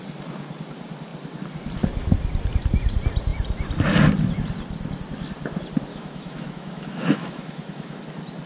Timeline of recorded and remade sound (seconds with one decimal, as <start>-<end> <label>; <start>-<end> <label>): 0.0-5.9 recorded; 5.9-8.0 remade; 8.0-8.5 recorded